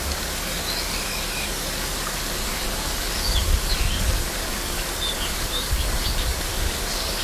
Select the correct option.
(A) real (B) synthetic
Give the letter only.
B